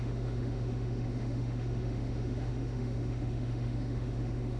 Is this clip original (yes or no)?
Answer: no